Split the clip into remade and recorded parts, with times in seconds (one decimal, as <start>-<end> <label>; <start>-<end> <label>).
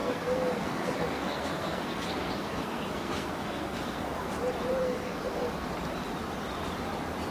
0.0-4.3 remade; 4.3-4.8 recorded; 4.8-5.7 remade; 5.7-7.3 recorded